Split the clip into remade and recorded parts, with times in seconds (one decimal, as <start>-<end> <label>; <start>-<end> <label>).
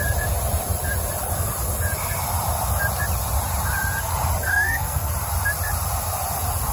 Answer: 0.0-4.5 recorded; 4.5-5.1 remade; 5.1-6.7 recorded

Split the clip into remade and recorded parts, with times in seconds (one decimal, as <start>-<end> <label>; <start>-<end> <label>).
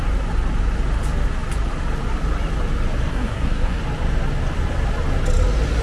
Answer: 0.0-3.1 recorded; 3.1-3.8 remade; 3.8-5.8 recorded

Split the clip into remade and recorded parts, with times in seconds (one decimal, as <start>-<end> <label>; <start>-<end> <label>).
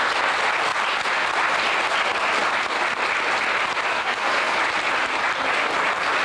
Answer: 0.0-3.9 recorded; 3.9-4.6 remade; 4.6-6.2 recorded